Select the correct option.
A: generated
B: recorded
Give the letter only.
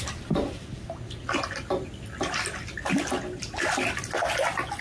B